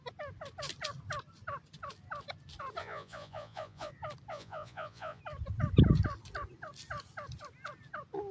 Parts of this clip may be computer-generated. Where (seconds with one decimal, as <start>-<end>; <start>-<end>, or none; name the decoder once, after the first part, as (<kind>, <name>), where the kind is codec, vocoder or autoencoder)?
2.8-3.9 (vocoder, Vocos); 4.3-5.2